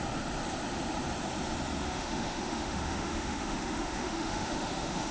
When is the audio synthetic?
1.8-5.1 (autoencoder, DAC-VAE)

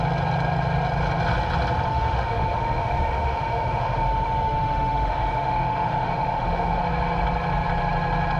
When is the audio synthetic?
1.9-6.8 (autoencoder, DAC-VAE)

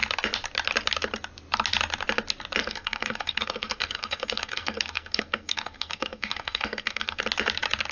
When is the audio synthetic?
2.6-7.2 (codec, SNAC)

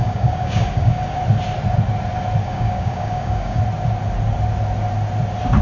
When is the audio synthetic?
0.0-1.2 (codec, DAC); 2.4-3.6

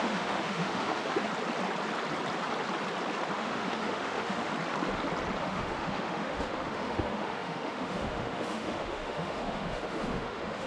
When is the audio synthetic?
0.0-1.3 (autoencoder, DAC-VAE); 3.3-4.5; 5.4-10.7

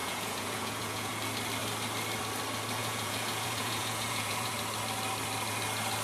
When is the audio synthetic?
0.0-1.1 (vocoder, Vocos); 2.8-4.5

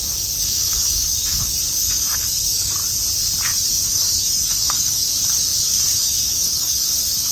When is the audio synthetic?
0.0-2.8 (codec, DAC); 3.7-7.3

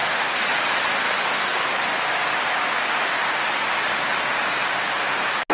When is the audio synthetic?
0.0-0.6 (vocoder, Vocos)